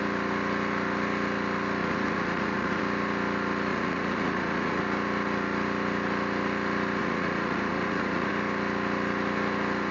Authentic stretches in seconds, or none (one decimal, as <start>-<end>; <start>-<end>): 0.0-1.8; 2.8-3.7; 4.8-7.0; 8.3-9.9